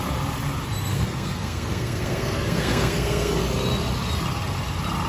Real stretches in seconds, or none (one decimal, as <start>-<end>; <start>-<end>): 0.0-0.9; 3.4-5.1